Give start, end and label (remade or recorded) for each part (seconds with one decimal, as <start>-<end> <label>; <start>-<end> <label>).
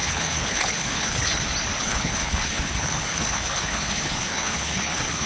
0.0-1.4 remade; 1.4-1.8 recorded; 1.8-5.3 remade